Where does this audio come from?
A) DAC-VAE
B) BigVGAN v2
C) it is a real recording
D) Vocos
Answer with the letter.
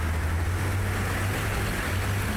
C